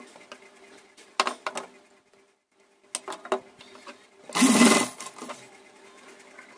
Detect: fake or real real